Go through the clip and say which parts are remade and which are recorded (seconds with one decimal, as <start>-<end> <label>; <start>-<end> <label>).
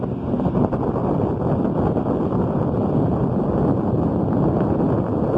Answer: 0.0-5.4 recorded